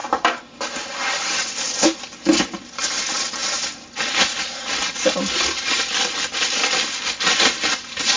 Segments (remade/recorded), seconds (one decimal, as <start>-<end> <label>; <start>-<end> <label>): 0.0-8.2 recorded